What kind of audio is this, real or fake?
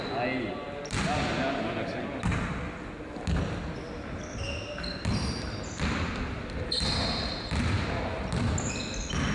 real